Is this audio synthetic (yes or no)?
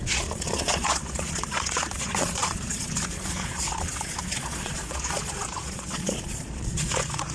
yes